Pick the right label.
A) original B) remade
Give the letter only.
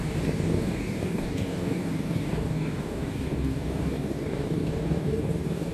B